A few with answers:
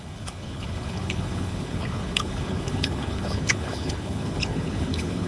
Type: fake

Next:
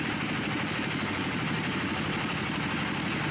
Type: real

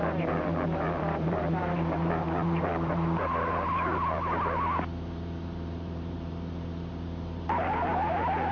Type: fake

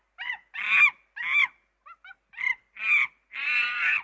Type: real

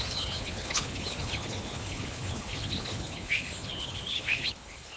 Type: fake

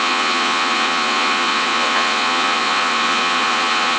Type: fake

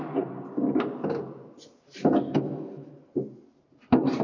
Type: real